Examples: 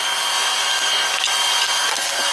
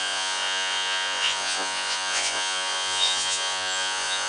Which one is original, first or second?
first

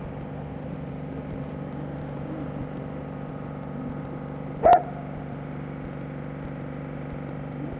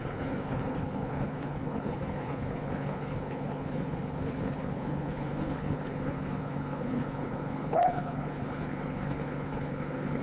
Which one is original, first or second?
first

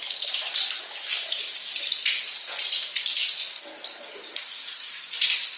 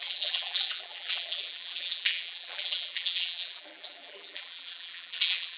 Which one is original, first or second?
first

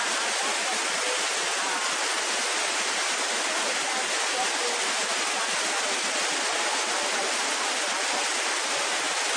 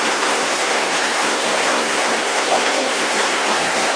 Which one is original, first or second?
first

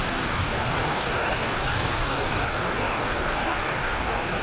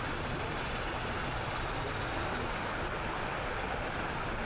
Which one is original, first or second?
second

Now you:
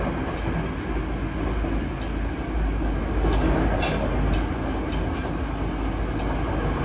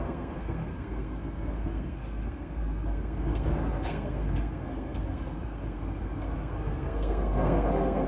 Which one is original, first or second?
first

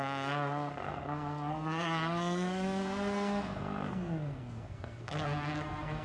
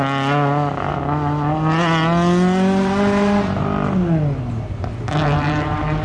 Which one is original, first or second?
second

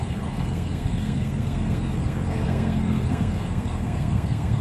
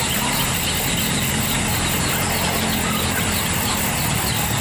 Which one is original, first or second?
second